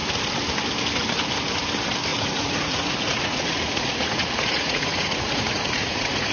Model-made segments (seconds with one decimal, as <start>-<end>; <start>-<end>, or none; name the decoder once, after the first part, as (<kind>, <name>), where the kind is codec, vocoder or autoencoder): 2.1-6.3 (vocoder, Vocos)